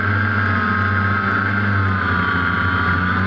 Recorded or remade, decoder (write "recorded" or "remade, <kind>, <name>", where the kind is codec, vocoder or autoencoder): recorded